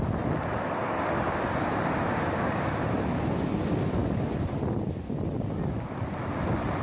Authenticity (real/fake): real